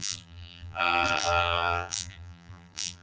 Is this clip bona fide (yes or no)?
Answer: no